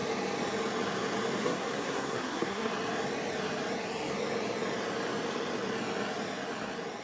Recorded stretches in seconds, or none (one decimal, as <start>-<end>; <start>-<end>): 0.0-1.4; 2.7-7.0